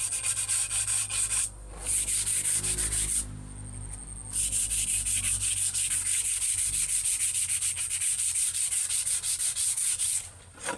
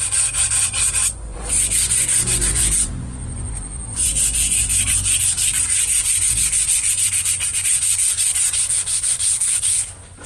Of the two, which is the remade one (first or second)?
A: second